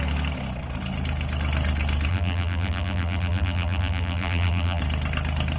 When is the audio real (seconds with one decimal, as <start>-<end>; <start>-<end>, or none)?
0.0-2.1; 4.8-5.6